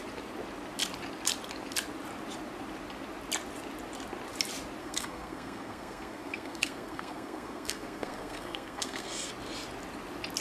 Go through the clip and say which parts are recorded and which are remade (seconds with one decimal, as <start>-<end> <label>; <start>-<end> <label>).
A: 0.0-4.8 recorded; 4.8-9.3 remade; 9.3-10.4 recorded